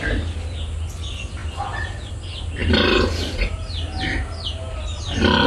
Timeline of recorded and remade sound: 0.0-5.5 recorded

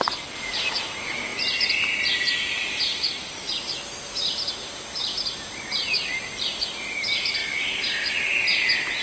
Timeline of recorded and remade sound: 0.0-9.0 recorded

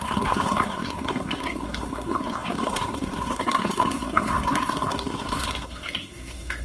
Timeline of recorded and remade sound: 0.0-6.6 remade

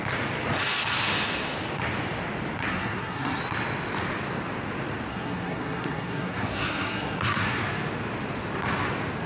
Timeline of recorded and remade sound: 0.0-2.7 recorded; 2.7-3.4 remade; 3.4-5.1 recorded; 5.1-7.6 remade; 7.6-9.3 recorded

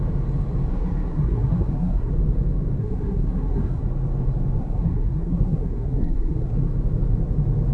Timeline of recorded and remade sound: 0.0-0.7 recorded; 0.7-2.1 remade; 2.1-2.8 recorded; 2.8-3.8 remade; 3.8-4.6 recorded; 4.6-6.7 remade; 6.7-7.7 recorded

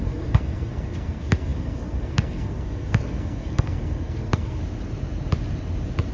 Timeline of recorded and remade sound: 0.0-4.6 remade; 4.6-6.1 recorded